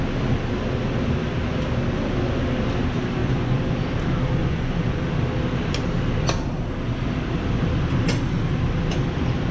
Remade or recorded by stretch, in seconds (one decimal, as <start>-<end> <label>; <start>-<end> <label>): 0.0-3.2 recorded; 3.2-3.7 remade; 3.7-4.4 recorded; 4.4-5.0 remade; 5.0-9.5 recorded